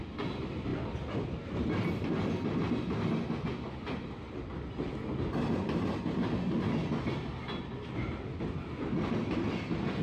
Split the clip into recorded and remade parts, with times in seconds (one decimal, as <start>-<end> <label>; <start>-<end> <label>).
0.0-10.0 recorded